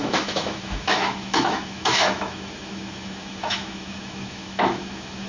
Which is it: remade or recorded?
remade